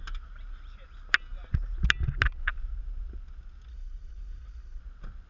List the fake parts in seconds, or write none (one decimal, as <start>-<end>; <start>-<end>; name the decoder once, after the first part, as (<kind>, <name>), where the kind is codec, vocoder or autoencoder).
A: 3.7-4.8 (codec, HILCodec)